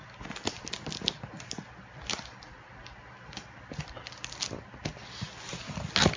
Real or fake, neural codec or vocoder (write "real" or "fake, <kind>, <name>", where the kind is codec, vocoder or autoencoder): real